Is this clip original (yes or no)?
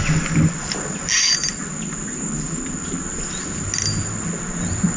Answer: yes